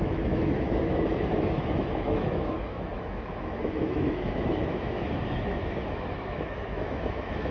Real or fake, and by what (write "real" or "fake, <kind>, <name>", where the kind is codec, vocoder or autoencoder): fake, autoencoder, DAC-VAE